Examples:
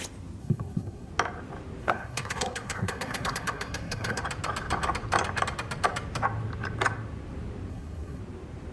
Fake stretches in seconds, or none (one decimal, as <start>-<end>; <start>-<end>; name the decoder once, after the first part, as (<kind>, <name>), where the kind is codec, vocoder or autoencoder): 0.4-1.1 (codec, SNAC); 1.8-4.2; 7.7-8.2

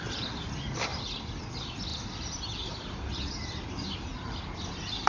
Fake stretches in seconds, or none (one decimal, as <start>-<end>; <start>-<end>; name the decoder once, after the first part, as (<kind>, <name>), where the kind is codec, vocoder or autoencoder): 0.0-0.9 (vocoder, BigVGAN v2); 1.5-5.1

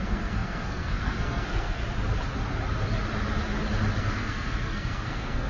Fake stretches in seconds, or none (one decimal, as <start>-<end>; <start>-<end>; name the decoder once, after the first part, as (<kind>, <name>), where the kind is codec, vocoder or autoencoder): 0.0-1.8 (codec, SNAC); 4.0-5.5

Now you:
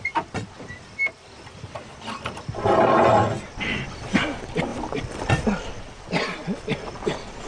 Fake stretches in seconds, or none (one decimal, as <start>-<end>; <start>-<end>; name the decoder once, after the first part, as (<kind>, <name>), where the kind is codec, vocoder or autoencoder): none

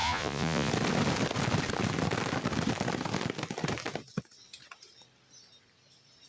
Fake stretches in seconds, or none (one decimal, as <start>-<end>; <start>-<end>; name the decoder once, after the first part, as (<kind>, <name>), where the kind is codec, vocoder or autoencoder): 0.0-0.7 (vocoder, Vocos)

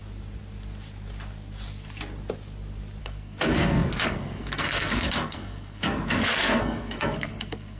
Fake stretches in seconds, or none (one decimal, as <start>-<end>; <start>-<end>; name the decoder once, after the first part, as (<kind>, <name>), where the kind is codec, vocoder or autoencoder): 3.0-7.8 (codec, SNAC)